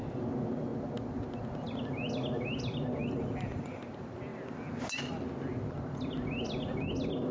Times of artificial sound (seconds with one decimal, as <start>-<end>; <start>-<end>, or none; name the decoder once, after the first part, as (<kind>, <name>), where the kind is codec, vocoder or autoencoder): 3.0-3.8 (vocoder, BigVGAN v2)